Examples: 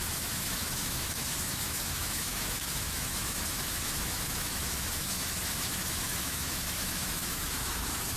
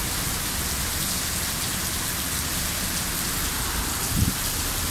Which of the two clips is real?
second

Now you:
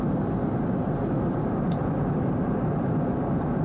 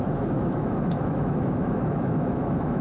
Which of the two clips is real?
first